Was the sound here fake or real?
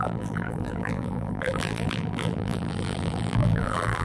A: fake